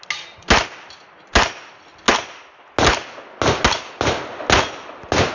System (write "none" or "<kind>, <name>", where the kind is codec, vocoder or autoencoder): none